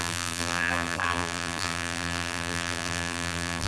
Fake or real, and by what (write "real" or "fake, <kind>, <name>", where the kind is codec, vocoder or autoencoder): fake, vocoder, BigVGAN v2